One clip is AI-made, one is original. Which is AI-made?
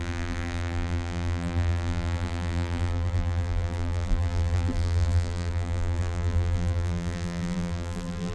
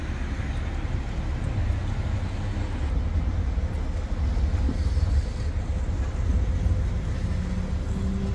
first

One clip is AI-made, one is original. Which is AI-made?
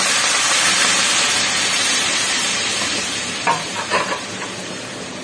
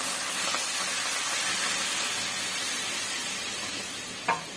first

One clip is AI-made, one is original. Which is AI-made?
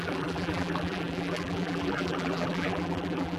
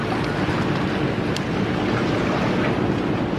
first